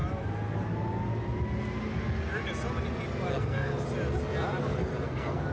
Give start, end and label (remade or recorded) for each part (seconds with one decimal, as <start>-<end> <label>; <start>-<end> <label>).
0.0-3.3 recorded; 3.3-3.7 remade; 3.7-4.6 recorded; 4.6-5.5 remade